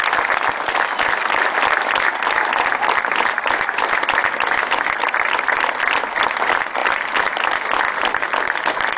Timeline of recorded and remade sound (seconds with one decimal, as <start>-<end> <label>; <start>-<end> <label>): 0.0-9.0 recorded